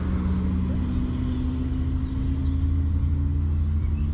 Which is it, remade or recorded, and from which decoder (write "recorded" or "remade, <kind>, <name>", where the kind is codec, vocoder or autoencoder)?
recorded